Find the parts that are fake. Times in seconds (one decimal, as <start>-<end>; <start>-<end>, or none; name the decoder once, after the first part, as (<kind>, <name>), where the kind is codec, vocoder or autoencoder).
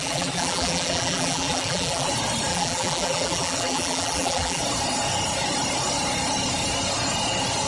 0.0-2.1 (vocoder, BigVGAN v2); 2.5-4.6